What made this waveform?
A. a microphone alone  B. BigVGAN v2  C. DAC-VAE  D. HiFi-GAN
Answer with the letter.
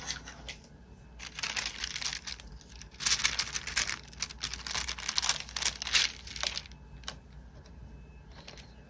A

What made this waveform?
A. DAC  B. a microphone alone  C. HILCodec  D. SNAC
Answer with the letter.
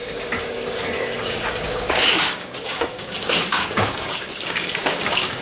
A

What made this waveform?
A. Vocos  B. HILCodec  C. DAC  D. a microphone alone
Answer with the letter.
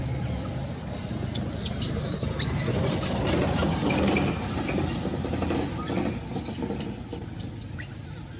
D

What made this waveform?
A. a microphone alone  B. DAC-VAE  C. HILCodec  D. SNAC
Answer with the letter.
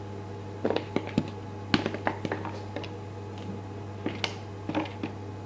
A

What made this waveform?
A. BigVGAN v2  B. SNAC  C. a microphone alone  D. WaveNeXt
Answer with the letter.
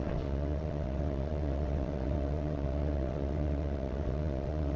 D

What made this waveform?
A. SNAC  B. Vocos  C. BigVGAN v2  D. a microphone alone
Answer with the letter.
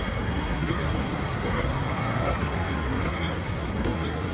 A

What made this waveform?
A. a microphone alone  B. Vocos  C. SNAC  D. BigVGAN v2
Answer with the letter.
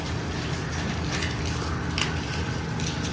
A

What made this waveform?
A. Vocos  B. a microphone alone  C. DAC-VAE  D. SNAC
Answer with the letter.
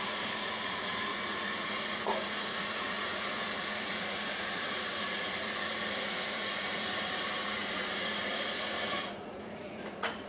A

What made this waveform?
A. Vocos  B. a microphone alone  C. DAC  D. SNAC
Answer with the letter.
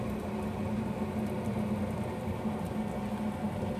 B